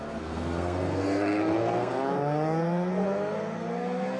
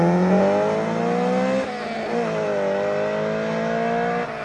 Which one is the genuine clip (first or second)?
second